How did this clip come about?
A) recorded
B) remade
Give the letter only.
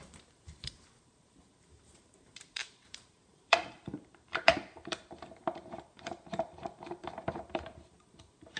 B